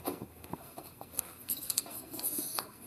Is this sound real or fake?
fake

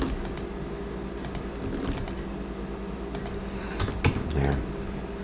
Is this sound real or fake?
real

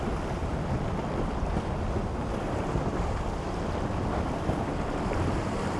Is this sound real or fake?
fake